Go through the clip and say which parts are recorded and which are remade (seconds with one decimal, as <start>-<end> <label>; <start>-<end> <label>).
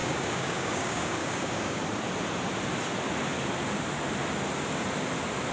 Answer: 0.0-1.8 remade; 1.8-5.5 recorded